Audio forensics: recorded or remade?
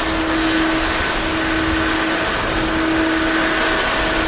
recorded